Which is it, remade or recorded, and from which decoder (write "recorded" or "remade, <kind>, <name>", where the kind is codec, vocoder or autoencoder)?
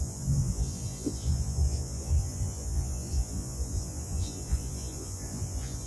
remade, vocoder, Vocos